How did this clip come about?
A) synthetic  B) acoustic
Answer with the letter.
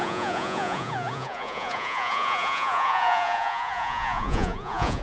A